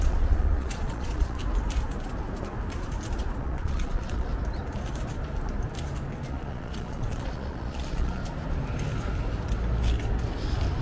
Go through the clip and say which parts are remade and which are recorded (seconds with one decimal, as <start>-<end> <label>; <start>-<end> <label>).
0.0-1.4 remade; 1.4-3.4 recorded; 3.4-4.3 remade; 4.3-6.3 recorded; 6.3-8.2 remade; 8.2-10.8 recorded

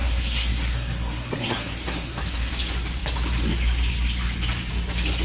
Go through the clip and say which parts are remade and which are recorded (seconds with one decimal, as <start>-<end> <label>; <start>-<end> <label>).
0.0-2.5 remade; 2.5-5.2 recorded

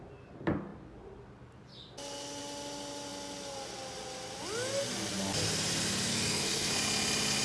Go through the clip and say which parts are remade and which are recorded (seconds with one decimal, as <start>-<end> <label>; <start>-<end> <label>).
0.0-6.1 recorded; 6.1-6.7 remade; 6.7-7.4 recorded

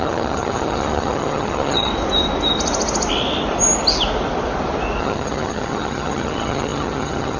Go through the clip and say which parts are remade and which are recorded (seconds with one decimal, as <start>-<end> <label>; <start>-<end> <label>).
0.0-1.9 remade; 1.9-5.0 recorded; 5.0-7.4 remade